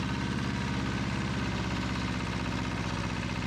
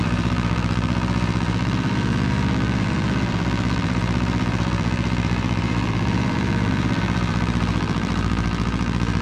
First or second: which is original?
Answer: first